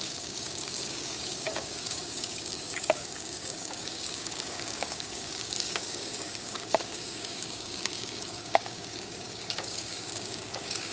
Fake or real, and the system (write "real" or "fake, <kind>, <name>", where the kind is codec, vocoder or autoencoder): fake, codec, DAC